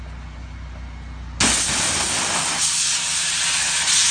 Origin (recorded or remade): recorded